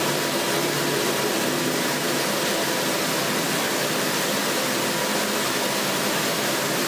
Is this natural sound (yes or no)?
yes